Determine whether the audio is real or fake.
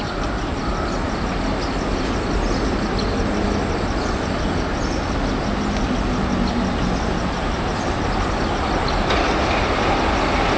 real